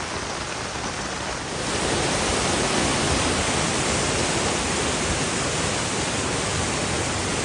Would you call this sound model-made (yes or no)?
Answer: yes